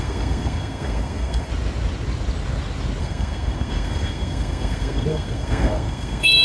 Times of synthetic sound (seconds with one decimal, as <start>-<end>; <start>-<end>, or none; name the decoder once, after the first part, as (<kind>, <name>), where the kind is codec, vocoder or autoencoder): 0.0-1.5 (codec, SNAC); 3.0-6.4